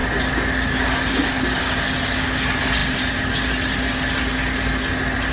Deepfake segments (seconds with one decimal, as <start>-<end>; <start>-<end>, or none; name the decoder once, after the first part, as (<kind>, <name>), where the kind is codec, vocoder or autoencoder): none